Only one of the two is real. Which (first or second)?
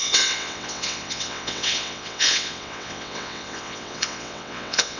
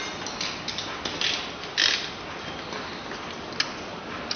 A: second